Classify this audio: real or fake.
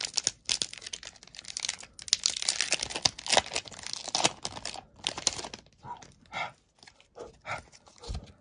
real